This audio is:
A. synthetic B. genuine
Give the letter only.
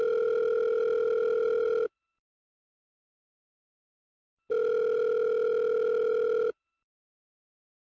B